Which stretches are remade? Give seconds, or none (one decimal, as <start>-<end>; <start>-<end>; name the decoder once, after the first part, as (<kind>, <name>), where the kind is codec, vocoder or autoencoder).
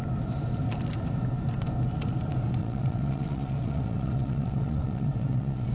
2.6-5.7 (vocoder, WaveNeXt)